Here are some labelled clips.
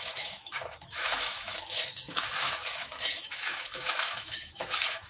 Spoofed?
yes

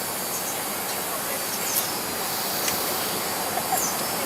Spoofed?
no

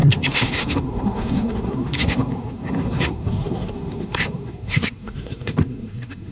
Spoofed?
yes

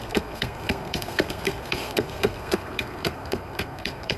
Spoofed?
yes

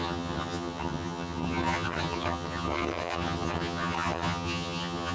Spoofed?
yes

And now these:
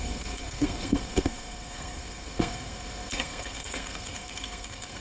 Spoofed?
yes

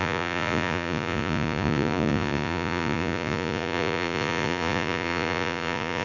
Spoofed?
yes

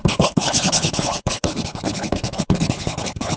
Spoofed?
yes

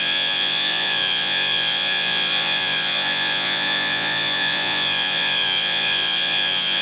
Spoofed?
yes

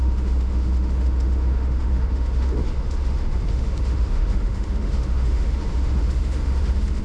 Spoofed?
yes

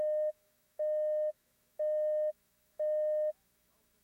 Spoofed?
yes